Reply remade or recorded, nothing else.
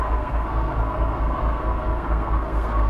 remade